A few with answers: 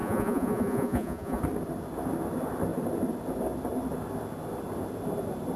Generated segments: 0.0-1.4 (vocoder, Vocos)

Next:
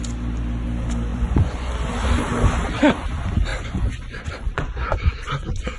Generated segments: 1.1-1.7 (vocoder, Vocos); 3.5-5.8

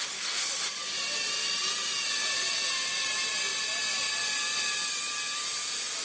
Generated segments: none

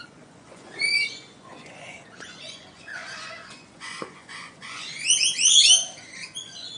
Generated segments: 0.0-5.5 (vocoder, Vocos); 6.0-6.8

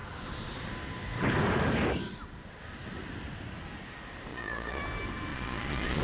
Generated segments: 4.3-4.8 (vocoder, Vocos); 5.3-6.0